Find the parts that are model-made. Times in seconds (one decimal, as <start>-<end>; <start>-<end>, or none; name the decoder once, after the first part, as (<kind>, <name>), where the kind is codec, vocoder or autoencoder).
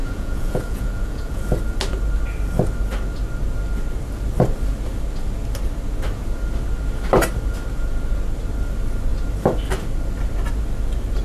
0.0-1.4 (vocoder, Vocos)